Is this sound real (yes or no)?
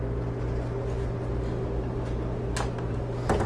yes